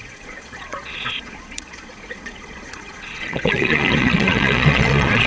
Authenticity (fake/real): fake